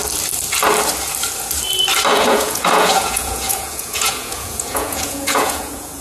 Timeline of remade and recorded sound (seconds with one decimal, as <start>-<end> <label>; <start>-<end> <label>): 0.0-2.1 recorded; 2.1-6.0 remade